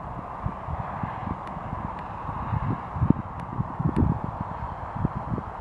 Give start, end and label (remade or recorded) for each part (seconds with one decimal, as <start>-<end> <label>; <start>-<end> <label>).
0.0-5.6 recorded